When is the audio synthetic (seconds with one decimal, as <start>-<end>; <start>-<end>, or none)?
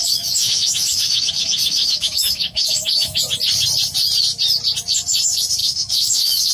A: 0.0-3.2; 5.6-6.5